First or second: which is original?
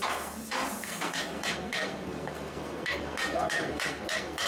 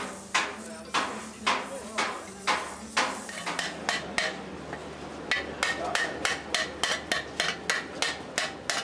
second